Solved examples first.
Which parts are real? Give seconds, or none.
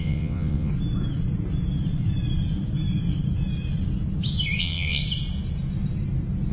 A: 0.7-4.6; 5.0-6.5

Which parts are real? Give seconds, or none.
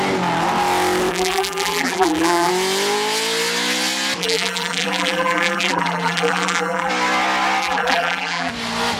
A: 0.0-1.1; 2.5-4.2; 6.9-7.6; 8.5-9.0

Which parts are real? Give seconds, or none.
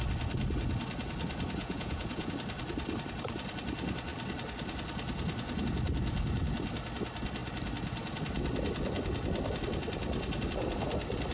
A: 0.0-1.6; 2.3-11.3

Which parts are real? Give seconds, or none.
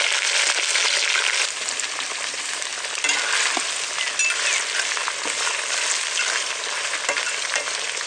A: 0.0-8.1